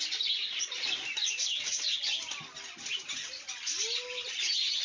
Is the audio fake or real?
real